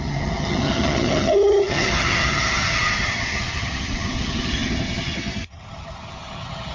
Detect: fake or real fake